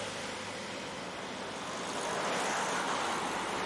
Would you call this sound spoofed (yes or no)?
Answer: no